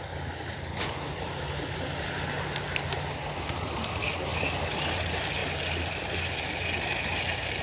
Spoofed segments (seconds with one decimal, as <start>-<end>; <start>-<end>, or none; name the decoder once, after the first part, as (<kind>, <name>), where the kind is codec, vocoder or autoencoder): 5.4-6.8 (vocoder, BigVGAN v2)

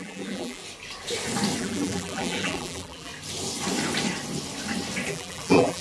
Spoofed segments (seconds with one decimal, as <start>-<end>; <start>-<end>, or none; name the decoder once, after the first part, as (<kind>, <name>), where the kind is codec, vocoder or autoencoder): 0.0-0.6 (vocoder, BigVGAN v2); 1.6-3.1; 5.1-5.8

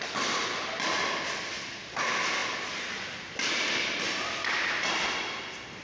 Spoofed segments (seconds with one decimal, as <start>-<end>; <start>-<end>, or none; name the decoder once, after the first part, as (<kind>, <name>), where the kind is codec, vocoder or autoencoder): none

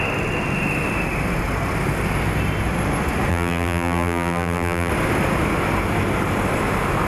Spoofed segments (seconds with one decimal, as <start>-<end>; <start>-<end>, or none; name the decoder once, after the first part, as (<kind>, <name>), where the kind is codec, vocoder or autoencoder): 3.3-4.9 (vocoder, BigVGAN v2)

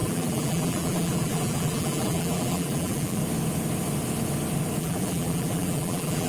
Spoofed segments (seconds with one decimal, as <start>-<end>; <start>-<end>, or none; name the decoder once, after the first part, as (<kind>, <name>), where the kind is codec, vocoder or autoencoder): 0.0-3.2 (vocoder, BigVGAN v2); 4.8-6.3

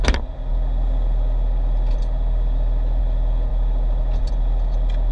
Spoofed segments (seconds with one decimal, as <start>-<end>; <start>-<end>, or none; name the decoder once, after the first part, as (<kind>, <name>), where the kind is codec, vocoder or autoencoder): none

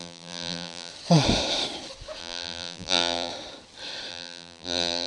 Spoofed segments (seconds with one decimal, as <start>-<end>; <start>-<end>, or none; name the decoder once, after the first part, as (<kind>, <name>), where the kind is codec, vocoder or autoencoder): 0.0-0.9 (vocoder, BigVGAN v2); 2.2-3.3; 4.1-5.1